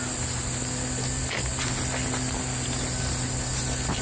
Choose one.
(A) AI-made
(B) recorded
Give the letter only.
B